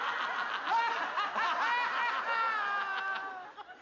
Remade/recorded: recorded